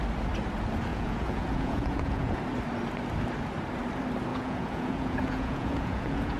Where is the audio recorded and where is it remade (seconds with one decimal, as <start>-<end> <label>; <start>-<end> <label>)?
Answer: 0.0-0.9 recorded; 0.9-2.4 remade; 2.4-4.3 recorded; 4.3-6.4 remade